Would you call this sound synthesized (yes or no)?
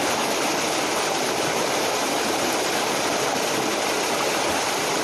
no